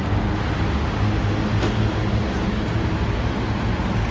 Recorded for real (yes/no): yes